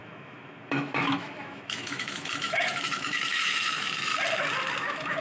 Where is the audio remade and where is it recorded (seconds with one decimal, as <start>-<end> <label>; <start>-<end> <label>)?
0.0-4.1 remade; 4.1-4.8 recorded; 4.8-5.2 remade